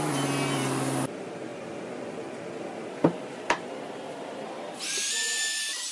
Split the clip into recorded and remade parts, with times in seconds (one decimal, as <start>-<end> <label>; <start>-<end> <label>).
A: 0.0-5.9 recorded